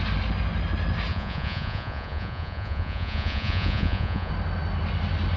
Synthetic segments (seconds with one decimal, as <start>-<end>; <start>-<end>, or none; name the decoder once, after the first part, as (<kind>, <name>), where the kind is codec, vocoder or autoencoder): 1.1-4.3 (vocoder, Vocos)